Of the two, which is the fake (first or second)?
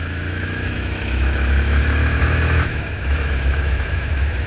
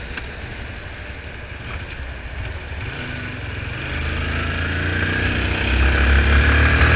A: first